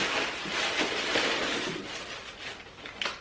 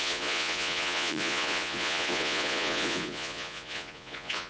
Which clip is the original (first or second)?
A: first